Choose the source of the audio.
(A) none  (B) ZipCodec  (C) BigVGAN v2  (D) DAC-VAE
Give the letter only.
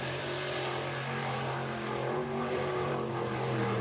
C